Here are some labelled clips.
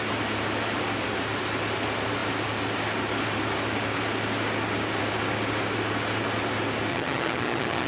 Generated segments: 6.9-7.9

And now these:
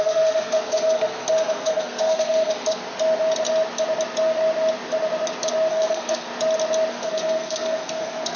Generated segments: 0.0-2.8; 5.7-6.3; 6.9-8.4

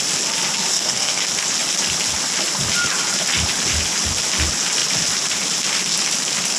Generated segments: 0.7-1.2

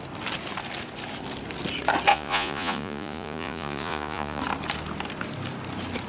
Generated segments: 2.1-4.4

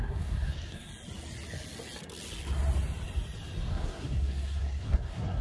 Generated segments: 0.0-0.9; 3.7-5.4